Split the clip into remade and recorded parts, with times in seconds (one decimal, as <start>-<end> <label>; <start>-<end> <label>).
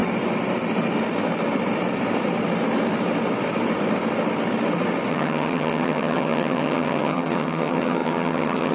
0.0-5.1 recorded; 5.1-8.7 remade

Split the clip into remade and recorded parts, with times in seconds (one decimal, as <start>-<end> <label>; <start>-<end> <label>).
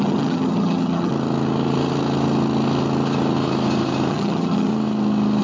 0.0-1.1 remade; 1.1-4.1 recorded; 4.1-4.7 remade; 4.7-5.4 recorded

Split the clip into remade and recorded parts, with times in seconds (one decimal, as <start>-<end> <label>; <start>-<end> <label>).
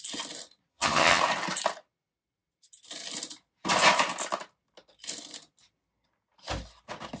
0.0-0.7 recorded; 0.7-1.2 remade; 1.2-7.2 recorded